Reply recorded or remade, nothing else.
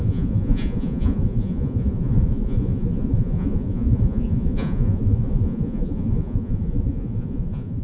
remade